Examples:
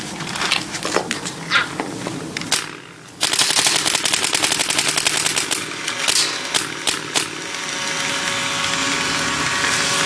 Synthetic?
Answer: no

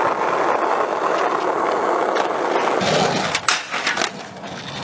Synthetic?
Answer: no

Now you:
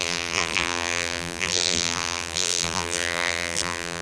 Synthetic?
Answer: yes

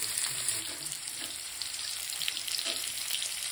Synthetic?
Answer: yes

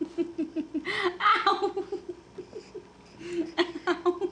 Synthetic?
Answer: no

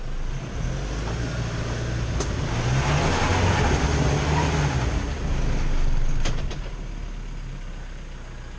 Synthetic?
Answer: no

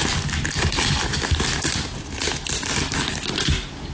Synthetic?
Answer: no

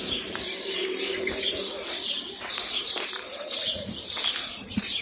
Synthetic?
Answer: yes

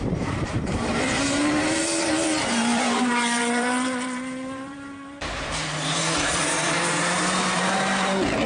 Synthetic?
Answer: yes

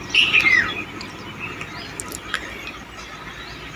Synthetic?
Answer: no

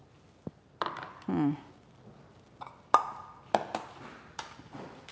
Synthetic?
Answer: no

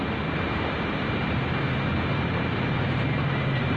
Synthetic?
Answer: yes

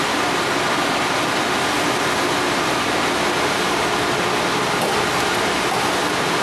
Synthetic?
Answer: no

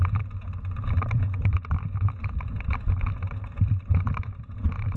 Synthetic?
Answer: yes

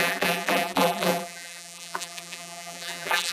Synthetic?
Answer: yes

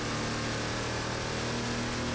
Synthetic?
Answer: no